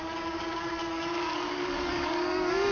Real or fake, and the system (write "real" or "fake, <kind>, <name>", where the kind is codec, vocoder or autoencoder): fake, codec, DAC